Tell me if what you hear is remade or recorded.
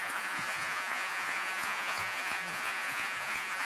remade